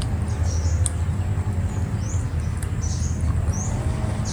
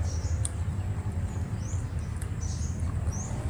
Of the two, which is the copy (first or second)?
second